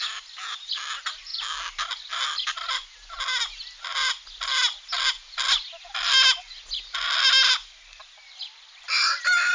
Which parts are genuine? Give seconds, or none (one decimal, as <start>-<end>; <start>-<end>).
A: 0.0-9.5